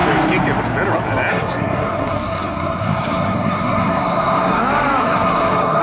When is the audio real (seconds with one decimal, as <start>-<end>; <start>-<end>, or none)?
0.0-1.3; 4.6-5.0